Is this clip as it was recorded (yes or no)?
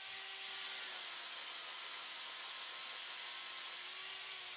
yes